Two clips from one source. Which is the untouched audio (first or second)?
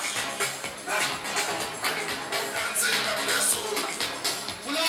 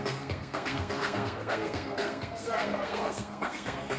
first